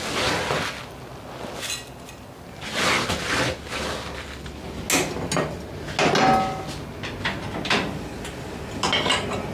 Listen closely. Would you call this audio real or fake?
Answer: real